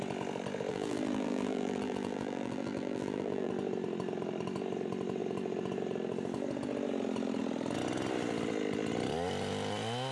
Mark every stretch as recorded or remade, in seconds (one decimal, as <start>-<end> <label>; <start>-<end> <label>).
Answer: 0.0-0.7 recorded; 0.7-3.5 remade; 3.5-10.1 recorded